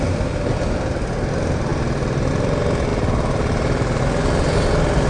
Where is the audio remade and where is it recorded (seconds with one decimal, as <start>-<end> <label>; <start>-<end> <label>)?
0.0-5.1 recorded